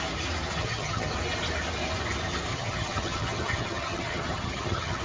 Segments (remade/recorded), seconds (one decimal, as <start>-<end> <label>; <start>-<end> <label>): 0.0-0.6 recorded; 0.6-1.1 remade; 1.1-2.5 recorded; 2.5-5.0 remade